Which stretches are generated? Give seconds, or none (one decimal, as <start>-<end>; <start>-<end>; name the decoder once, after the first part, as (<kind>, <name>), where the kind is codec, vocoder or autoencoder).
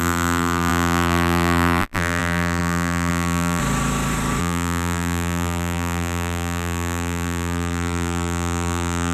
0.0-3.6 (vocoder, BigVGAN v2); 4.4-9.1